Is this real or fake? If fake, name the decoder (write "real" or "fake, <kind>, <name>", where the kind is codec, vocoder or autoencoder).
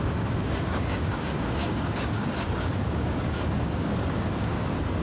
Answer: fake, codec, DAC